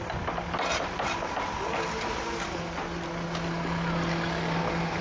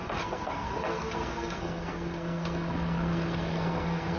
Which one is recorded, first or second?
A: first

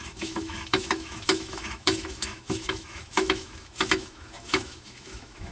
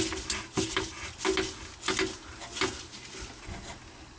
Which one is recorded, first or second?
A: second